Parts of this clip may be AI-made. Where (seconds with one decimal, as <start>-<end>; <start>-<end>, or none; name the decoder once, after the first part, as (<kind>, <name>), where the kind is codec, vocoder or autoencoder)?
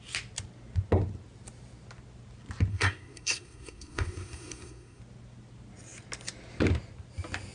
2.7-5.0 (codec, SNAC)